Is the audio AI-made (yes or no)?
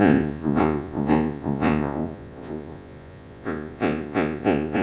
yes